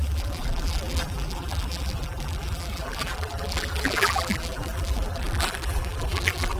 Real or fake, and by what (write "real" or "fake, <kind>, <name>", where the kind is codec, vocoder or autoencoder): fake, vocoder, BigVGAN v2